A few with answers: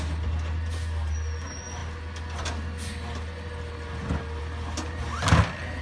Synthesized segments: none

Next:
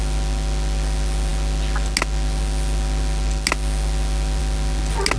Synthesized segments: none

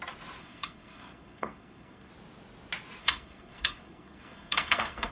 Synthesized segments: 0.4-2.1 (codec, SNAC); 3.0-5.1

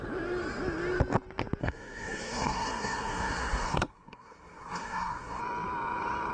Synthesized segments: 1.6-5.4 (codec, SNAC)

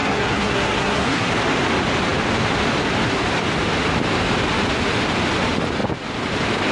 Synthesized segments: 0.0-1.3 (codec, SNAC)

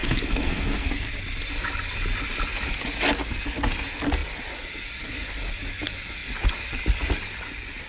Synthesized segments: 0.0-1.1 (codec, SNAC)

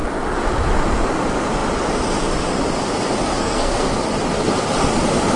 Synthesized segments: 3.3-3.9 (codec, SNAC)

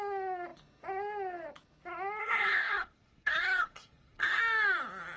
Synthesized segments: 2.2-4.4 (codec, SNAC)